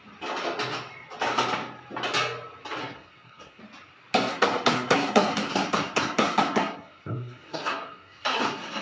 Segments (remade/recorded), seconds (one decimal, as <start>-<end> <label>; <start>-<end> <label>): 0.0-2.8 recorded; 2.8-3.6 remade; 3.6-4.3 recorded; 4.3-8.8 remade